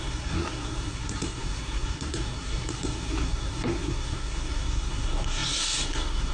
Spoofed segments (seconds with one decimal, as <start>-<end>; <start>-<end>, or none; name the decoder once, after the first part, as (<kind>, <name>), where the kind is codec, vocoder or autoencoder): 0.0-6.3 (codec, SNAC)

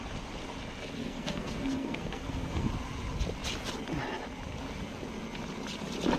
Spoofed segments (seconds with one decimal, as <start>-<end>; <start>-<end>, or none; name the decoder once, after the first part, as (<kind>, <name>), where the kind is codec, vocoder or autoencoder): 1.0-2.7 (codec, SNAC)

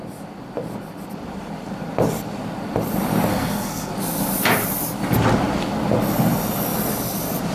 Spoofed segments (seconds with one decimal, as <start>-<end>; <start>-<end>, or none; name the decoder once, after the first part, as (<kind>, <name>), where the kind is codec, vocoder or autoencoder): 3.3-3.9 (codec, SNAC)

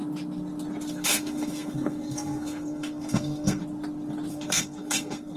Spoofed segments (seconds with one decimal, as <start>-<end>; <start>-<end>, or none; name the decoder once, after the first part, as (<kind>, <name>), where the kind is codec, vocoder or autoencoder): 0.9-3.6 (codec, SNAC); 4.3-5.4